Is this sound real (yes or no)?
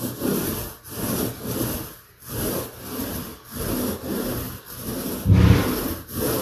yes